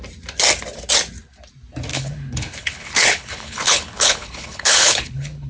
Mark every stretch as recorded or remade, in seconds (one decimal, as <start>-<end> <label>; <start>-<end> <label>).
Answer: 0.0-1.9 recorded; 1.9-5.5 remade